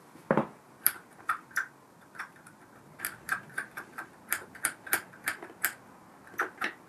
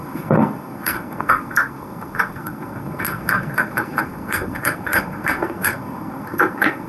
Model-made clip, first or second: second